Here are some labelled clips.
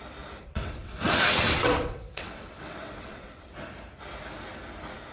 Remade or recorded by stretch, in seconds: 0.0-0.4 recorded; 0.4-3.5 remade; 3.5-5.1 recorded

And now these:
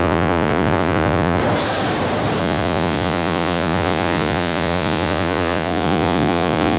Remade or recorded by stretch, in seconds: 0.0-1.4 remade; 1.4-2.4 recorded; 2.4-6.8 remade

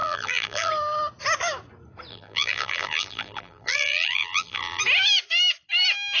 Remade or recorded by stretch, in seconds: 0.0-0.7 remade; 0.7-2.1 recorded; 2.1-4.8 remade; 4.8-6.2 recorded

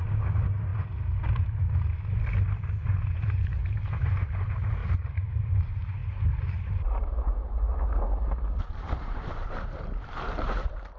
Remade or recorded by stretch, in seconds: 0.0-0.7 remade; 0.7-2.9 recorded; 2.9-4.8 remade; 4.8-5.6 recorded; 5.6-6.0 remade; 6.0-8.6 recorded; 8.6-11.0 remade

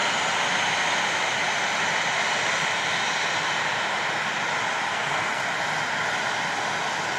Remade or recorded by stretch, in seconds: 0.0-4.9 recorded; 4.9-5.4 remade; 5.4-7.2 recorded

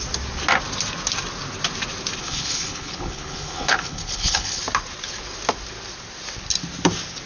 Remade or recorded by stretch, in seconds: 0.0-2.2 recorded; 2.2-4.6 remade; 4.6-7.3 recorded

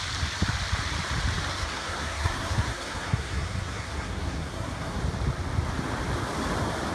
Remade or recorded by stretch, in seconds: 0.0-1.5 recorded; 1.5-5.0 remade; 5.0-6.9 recorded

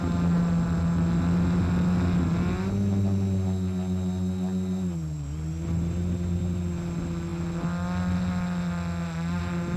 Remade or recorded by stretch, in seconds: 0.0-9.8 recorded